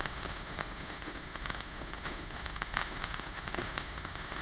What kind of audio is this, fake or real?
fake